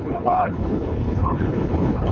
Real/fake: fake